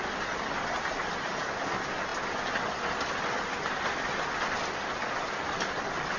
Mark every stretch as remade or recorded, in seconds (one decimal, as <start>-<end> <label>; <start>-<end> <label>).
0.0-6.2 recorded